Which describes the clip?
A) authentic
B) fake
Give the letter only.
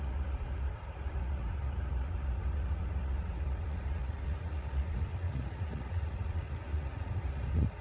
B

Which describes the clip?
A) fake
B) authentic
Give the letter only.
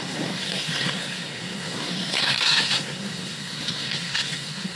A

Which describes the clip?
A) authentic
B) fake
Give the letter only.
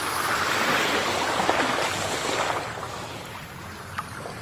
A